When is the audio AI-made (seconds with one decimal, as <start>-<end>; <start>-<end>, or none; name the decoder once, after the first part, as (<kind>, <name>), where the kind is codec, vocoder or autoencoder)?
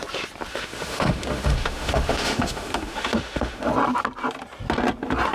0.5-3.7 (autoencoder, DAC-VAE)